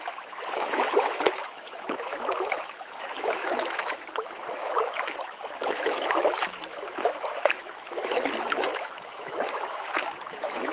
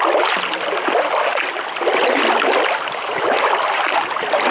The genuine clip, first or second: second